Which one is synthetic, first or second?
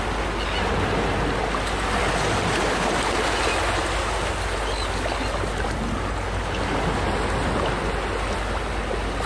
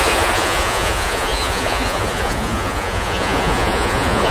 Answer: second